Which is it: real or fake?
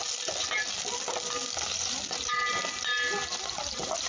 real